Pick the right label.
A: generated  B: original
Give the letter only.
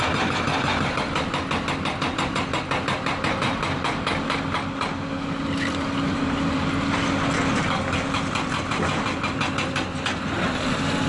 B